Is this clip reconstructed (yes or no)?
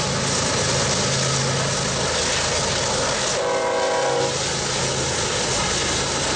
no